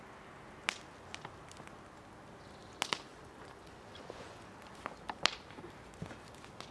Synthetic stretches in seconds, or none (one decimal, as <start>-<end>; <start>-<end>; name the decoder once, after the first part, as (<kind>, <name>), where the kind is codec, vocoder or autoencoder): 3.1-4.5 (vocoder, Vocos)

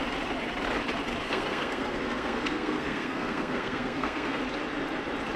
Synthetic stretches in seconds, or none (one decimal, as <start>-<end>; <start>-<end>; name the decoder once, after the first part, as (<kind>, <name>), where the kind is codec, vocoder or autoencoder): 1.2-4.4 (codec, SNAC)

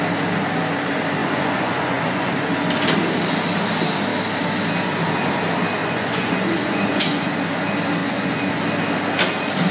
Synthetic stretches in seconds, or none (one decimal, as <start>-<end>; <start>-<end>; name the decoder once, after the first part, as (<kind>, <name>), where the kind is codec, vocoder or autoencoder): 1.2-2.3 (vocoder, Vocos); 5.8-7.3; 8.0-8.6

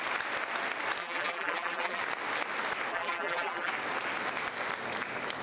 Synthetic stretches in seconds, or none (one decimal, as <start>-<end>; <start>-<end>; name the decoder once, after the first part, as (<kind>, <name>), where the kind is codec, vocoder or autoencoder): 1.0-2.0 (vocoder, BigVGAN v2); 2.9-3.7

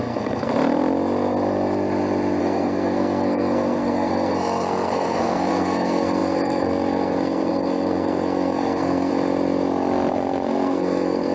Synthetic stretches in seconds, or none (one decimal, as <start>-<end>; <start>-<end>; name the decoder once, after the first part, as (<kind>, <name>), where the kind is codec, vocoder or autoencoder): 0.0-0.5 (codec, SNAC); 2.4-9.1; 10.1-11.3

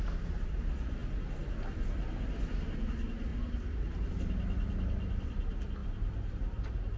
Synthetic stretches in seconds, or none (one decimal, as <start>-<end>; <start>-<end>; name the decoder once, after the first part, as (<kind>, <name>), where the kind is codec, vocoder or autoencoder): none

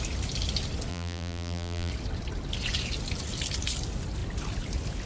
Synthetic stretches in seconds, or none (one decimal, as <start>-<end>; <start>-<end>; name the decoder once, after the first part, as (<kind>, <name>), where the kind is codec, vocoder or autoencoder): 0.9-1.9 (vocoder, BigVGAN v2)